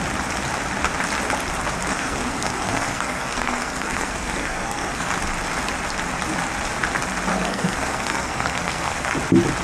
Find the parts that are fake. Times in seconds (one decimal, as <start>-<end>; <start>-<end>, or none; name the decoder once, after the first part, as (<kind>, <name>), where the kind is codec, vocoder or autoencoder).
1.9-5.1 (codec, SNAC); 7.3-9.1